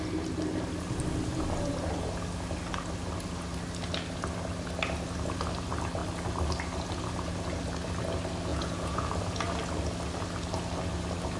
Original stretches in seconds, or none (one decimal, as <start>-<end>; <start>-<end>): 0.0-8.5; 9.1-11.4